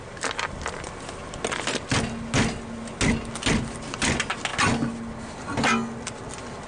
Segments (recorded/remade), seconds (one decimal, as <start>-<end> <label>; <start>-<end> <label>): 0.0-6.7 recorded